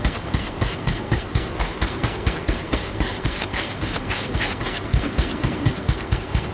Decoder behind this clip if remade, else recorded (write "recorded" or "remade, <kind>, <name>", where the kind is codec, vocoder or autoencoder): remade, codec, SNAC